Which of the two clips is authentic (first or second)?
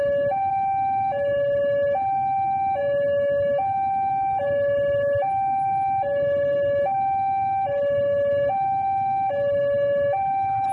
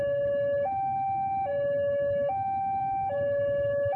first